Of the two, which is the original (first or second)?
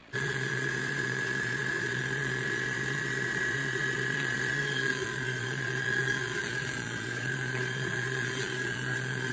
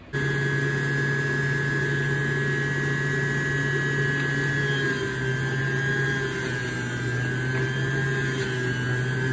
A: second